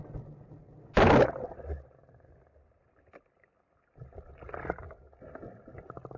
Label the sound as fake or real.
real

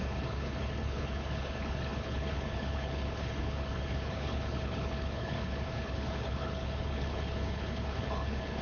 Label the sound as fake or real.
fake